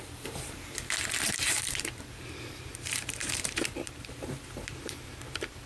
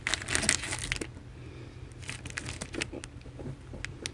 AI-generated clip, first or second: first